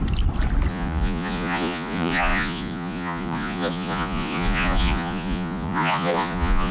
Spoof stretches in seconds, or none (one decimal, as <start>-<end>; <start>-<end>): 0.7-6.7